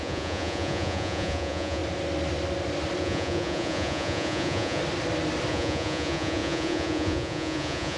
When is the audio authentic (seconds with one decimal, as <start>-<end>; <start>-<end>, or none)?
1.8-3.0; 4.8-5.5

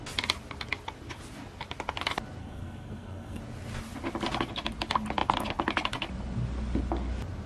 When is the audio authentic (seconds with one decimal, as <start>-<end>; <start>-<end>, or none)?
0.0-2.4; 3.4-7.5

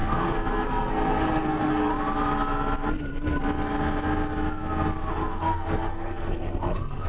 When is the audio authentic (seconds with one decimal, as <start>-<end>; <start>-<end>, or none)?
1.9-5.1